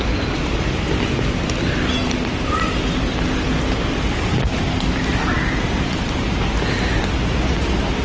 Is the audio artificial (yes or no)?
no